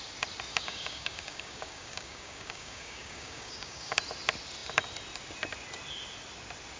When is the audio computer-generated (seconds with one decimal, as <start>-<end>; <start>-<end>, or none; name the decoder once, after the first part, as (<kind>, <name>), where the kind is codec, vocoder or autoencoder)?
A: 0.5-4.0 (codec, DAC)